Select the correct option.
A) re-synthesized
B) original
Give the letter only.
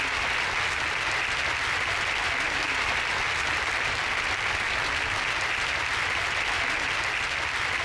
A